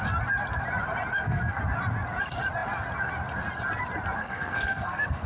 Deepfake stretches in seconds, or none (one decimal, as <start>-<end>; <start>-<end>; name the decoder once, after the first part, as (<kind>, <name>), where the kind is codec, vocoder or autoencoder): 1.1-1.6 (codec, SNAC); 4.2-5.3